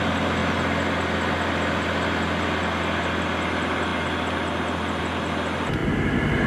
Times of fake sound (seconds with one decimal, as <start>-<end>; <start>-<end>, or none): none